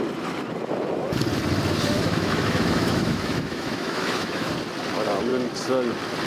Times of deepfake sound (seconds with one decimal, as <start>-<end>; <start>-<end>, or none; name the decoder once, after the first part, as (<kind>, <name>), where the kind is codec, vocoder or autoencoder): 1.9-4.5 (autoencoder, DAC-VAE)